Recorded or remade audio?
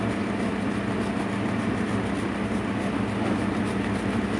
recorded